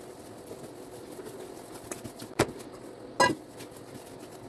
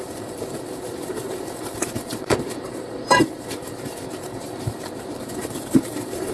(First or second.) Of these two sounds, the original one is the first